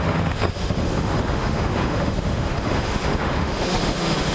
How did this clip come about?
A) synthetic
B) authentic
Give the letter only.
A